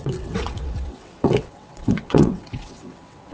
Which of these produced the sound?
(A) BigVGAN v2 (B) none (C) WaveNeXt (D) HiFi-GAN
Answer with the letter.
C